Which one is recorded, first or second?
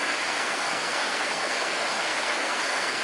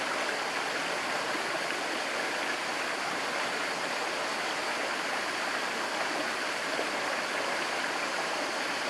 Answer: second